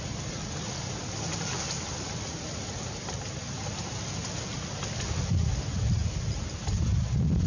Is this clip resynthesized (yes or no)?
no